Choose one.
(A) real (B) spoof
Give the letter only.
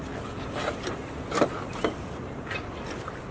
A